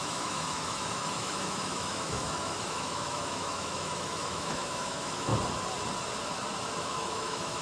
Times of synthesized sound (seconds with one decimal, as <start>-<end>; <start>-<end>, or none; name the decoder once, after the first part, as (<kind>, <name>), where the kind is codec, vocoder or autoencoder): 0.0-5.3 (autoencoder, DAC-VAE); 6.8-7.6